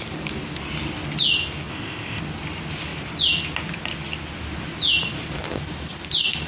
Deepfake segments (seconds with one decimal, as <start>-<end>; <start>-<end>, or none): 1.7-2.2

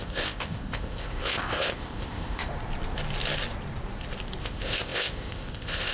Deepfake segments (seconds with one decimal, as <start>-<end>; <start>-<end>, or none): 0.0-2.5; 4.4-5.9